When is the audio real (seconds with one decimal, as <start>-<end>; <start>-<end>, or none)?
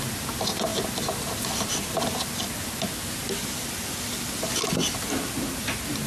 0.0-6.1